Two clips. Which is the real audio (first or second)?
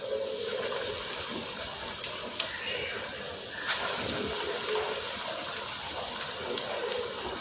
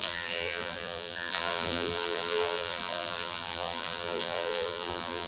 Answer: first